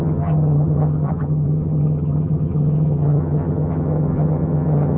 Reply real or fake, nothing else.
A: fake